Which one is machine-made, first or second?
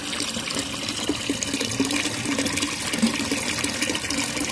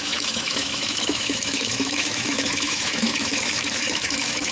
second